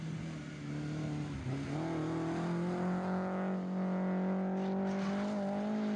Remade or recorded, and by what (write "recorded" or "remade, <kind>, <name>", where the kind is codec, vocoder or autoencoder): recorded